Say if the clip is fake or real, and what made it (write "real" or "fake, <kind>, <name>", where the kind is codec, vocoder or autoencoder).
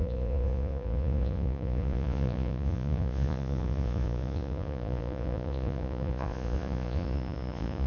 fake, vocoder, Vocos